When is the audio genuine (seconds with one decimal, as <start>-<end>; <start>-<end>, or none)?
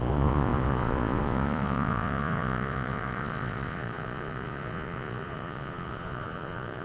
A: none